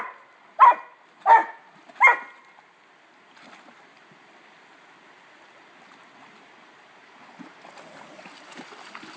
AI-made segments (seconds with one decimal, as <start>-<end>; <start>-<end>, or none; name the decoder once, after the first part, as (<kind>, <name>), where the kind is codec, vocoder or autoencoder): none